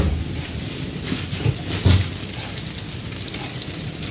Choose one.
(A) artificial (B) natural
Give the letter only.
B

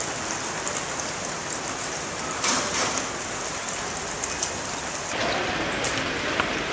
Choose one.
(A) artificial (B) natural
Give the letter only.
B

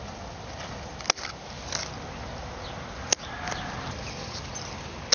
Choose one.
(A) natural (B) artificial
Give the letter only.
A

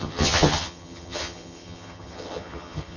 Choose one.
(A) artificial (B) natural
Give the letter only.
A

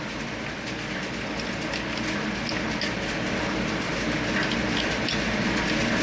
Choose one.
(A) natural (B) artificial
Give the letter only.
A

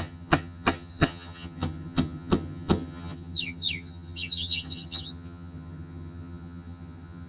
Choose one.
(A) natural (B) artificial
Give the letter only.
B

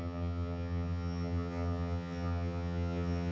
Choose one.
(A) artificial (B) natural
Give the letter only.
A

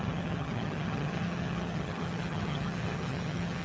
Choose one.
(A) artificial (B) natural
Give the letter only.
A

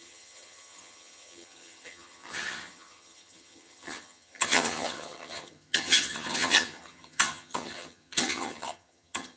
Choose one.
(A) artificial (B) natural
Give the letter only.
A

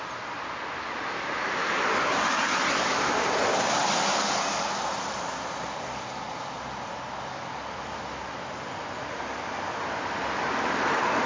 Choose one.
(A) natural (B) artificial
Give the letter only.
A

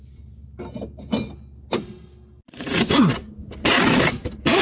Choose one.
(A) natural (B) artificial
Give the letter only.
A